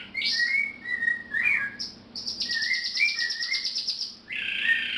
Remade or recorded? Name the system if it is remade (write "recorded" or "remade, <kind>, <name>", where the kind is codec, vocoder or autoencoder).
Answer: recorded